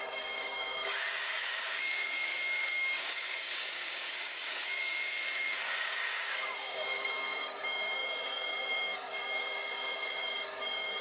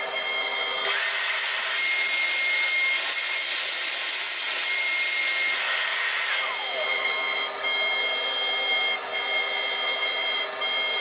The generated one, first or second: first